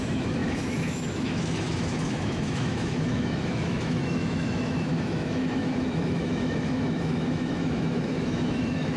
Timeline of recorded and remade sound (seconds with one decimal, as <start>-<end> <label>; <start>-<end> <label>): 0.0-9.0 remade